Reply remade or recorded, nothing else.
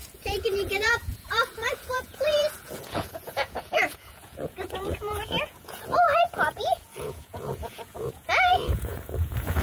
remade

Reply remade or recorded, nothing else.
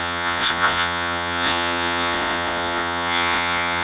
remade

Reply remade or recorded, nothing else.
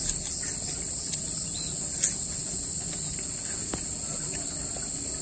recorded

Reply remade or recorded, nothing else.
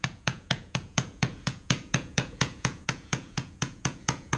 remade